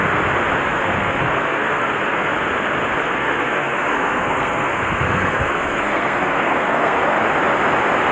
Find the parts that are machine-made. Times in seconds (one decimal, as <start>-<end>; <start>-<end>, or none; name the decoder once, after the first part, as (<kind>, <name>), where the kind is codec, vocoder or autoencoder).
0.6-2.3 (codec, SNAC); 3.0-7.2